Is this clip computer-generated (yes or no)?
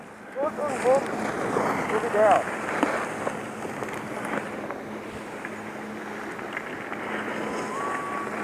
no